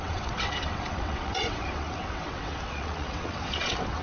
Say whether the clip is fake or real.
fake